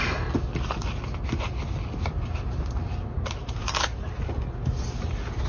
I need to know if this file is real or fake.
real